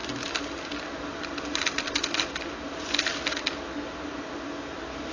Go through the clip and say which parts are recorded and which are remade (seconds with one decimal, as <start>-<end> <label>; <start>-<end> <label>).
0.0-5.1 recorded